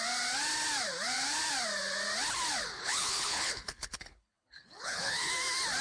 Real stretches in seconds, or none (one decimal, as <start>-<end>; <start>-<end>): 0.0-2.6; 5.3-5.8

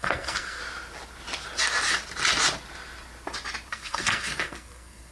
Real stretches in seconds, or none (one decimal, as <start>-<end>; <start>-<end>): 0.6-3.7